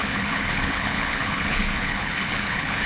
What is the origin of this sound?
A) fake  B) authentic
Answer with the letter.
A